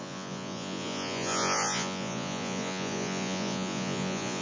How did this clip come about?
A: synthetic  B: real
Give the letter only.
A